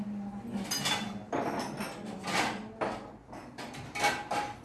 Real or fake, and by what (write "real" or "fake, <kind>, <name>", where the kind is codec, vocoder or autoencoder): real